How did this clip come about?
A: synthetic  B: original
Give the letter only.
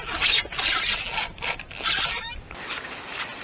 B